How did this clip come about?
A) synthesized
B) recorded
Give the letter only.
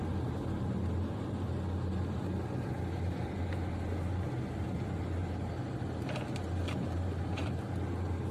B